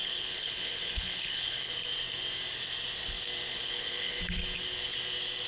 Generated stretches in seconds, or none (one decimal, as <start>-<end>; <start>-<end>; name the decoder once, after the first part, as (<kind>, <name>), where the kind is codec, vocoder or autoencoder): 0.0-1.7 (codec, HILCodec); 3.5-4.2